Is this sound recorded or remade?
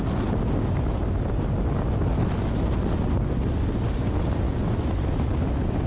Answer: recorded